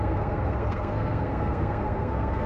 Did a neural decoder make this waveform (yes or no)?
yes